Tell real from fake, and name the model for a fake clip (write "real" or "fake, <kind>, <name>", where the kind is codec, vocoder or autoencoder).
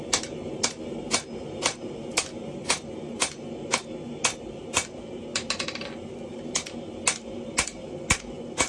real